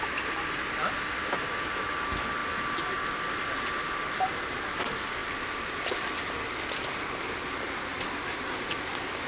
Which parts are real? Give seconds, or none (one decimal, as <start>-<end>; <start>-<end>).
0.0-2.4; 3.4-5.2; 6.6-9.3